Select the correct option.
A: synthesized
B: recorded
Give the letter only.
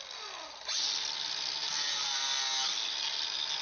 B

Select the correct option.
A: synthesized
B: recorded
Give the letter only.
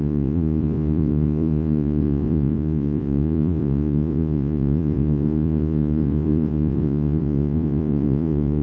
A